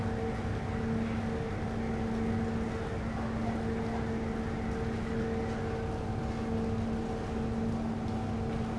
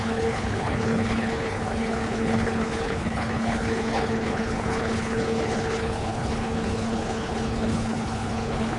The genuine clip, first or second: first